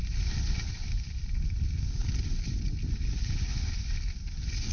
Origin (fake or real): real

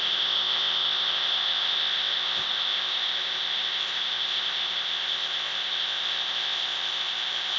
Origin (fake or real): fake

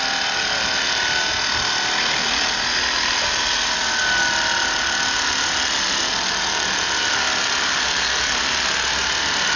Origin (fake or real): real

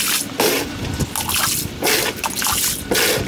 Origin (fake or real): real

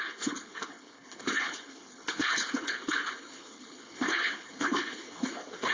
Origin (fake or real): fake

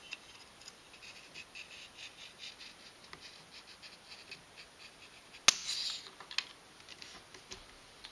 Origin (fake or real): real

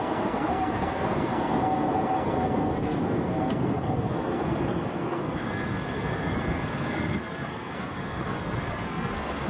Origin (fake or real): fake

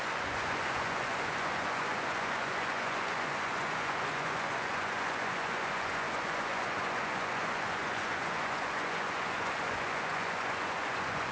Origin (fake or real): fake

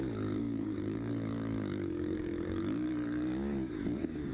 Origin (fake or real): fake